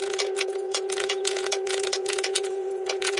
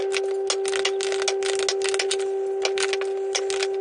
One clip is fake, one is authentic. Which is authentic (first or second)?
second